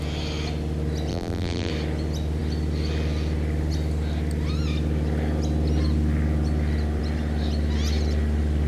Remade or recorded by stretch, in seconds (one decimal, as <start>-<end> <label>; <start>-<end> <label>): 0.0-1.1 recorded; 1.1-1.7 remade; 1.7-8.7 recorded